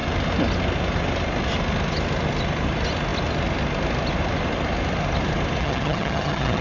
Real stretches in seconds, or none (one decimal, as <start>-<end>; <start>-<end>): 0.0-5.6